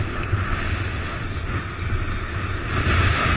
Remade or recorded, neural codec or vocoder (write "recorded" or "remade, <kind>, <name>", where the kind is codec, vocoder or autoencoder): recorded